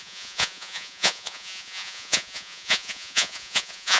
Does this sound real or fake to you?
fake